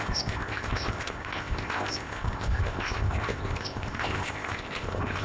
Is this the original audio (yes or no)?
no